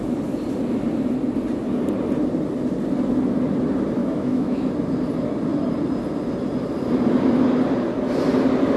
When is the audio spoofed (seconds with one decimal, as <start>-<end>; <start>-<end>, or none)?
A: 4.0-4.7